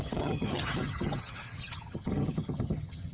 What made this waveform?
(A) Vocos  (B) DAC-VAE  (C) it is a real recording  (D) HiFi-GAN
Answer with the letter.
D